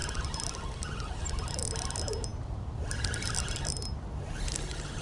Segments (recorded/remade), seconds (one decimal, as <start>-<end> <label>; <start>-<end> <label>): 0.0-5.0 recorded